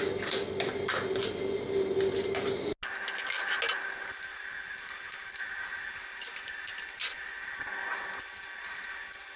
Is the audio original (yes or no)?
yes